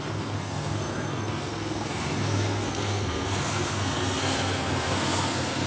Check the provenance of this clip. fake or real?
fake